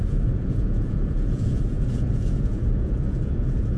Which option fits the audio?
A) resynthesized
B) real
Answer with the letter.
A